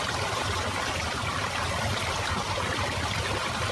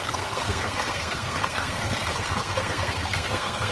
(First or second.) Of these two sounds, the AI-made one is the second